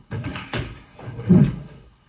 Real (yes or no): no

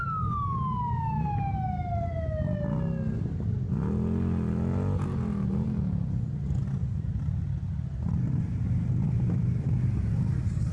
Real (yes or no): yes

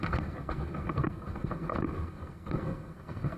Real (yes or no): no